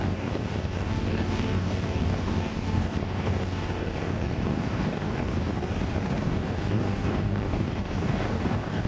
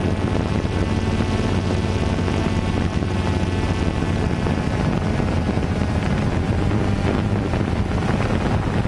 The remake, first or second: first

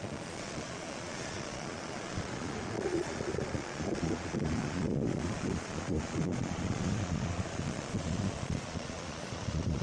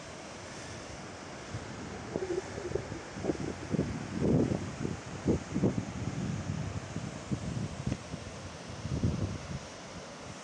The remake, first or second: first